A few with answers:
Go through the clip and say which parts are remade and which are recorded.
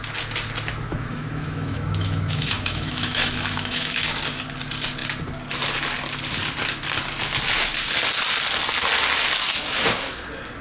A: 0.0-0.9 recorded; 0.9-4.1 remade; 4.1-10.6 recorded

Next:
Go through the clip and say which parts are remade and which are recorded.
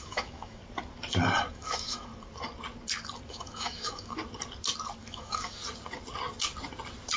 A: 0.0-0.6 remade; 0.6-1.5 recorded; 1.5-2.1 remade; 2.1-3.3 recorded; 3.3-4.2 remade; 4.2-5.0 recorded; 5.0-5.6 remade; 5.6-7.2 recorded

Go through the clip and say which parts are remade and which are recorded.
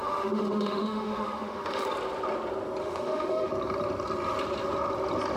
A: 0.0-1.9 remade; 1.9-2.8 recorded; 2.8-3.5 remade; 3.5-5.4 recorded